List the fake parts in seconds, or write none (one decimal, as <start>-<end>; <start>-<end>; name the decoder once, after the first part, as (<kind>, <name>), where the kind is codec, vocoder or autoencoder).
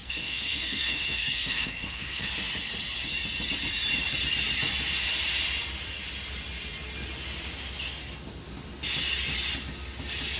0.0-2.3 (codec, SNAC)